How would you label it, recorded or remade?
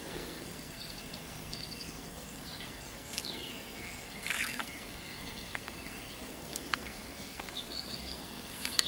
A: remade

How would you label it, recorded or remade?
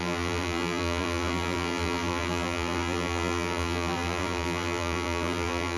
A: remade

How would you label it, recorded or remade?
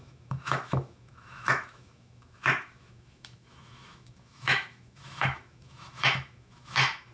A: remade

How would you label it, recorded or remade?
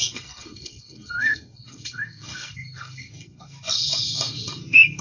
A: remade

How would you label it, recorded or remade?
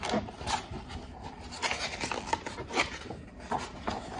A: recorded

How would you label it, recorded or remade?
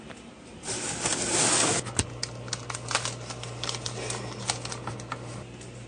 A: recorded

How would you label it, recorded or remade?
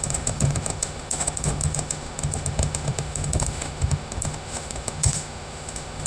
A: remade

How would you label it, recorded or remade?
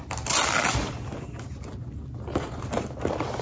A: recorded